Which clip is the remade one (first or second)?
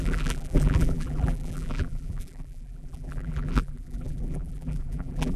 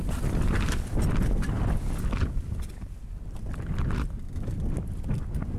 first